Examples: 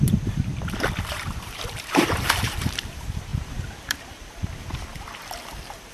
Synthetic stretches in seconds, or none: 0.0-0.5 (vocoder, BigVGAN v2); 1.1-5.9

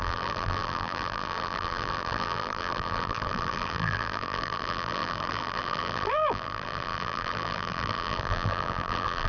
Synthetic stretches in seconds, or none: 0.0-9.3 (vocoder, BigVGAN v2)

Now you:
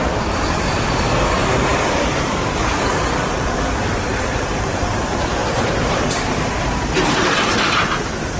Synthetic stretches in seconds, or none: 1.7-3.0 (vocoder, BigVGAN v2); 4.1-4.8; 5.4-7.5

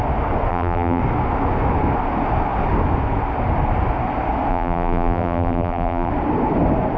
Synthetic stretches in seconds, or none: 0.5-1.0 (vocoder, BigVGAN v2); 4.5-6.1